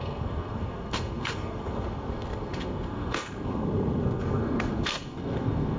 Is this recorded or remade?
remade